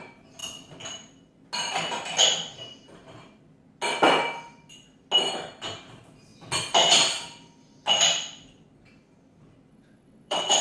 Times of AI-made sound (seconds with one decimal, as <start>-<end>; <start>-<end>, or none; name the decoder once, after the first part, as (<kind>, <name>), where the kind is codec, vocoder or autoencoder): 9.7-10.6 (vocoder, WaveNeXt)